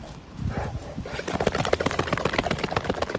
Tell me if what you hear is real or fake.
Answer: real